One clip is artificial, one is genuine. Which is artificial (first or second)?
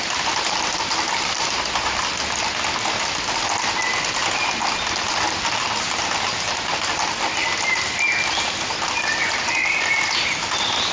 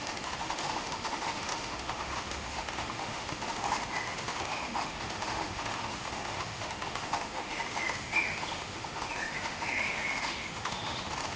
second